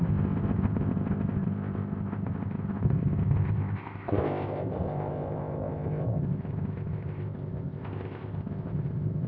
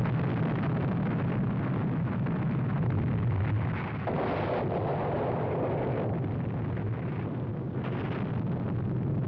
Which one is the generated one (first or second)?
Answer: first